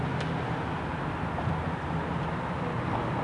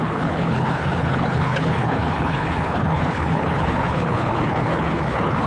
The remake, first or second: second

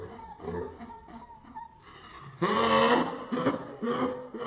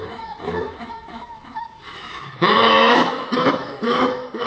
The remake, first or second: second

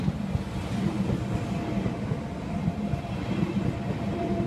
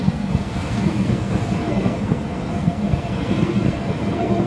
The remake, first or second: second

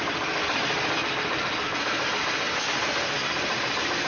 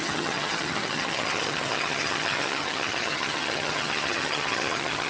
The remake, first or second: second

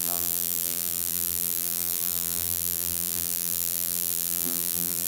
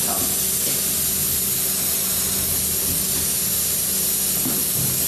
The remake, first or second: first